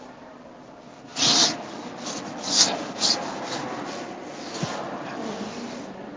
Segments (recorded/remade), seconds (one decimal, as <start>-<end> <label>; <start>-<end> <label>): 0.0-6.2 recorded